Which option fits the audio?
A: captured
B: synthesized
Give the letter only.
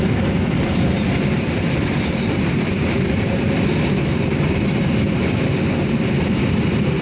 B